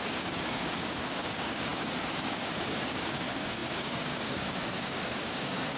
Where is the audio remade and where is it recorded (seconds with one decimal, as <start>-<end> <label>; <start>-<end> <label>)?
0.0-5.8 remade